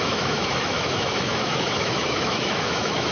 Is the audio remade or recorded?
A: remade